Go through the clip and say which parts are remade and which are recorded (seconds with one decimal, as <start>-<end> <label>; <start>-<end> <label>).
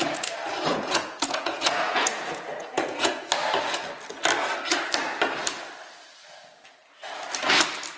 0.0-0.7 recorded; 0.7-3.3 remade; 3.3-8.0 recorded